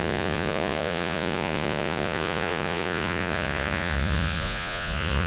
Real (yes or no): no